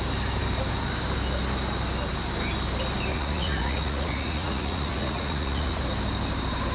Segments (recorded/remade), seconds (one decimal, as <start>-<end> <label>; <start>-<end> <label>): 0.0-3.1 recorded; 3.1-5.8 remade; 5.8-6.7 recorded